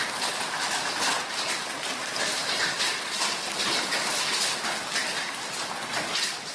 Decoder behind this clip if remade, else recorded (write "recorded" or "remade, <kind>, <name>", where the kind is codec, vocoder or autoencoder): recorded